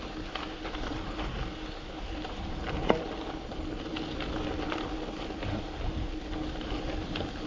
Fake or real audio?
real